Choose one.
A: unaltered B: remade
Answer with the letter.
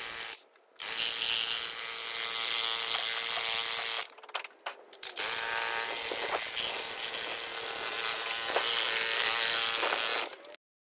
A